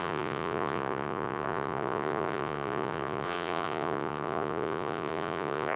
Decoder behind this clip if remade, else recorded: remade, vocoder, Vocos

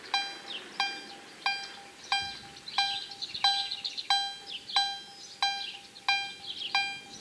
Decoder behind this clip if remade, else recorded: recorded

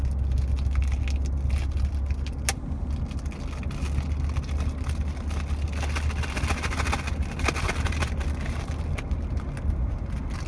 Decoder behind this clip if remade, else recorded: recorded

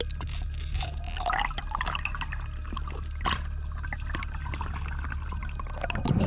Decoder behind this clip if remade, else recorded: recorded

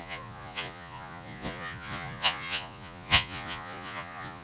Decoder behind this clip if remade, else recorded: remade, vocoder, Vocos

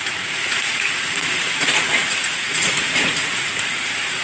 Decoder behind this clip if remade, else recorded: remade, vocoder, Vocos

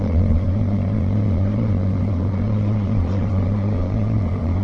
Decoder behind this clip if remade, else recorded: remade, vocoder, Vocos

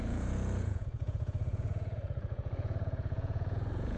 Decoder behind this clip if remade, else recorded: remade, vocoder, Vocos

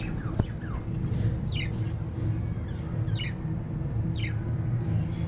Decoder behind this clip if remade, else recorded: recorded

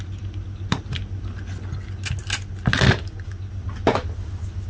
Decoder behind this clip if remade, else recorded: recorded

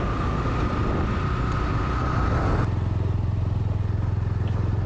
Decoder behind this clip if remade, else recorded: recorded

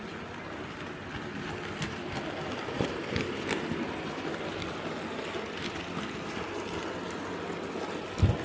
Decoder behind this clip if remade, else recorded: recorded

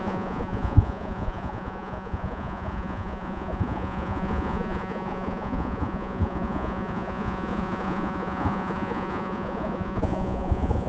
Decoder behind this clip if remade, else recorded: remade, vocoder, Vocos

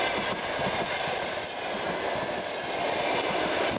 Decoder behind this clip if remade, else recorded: recorded